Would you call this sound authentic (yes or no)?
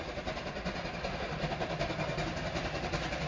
yes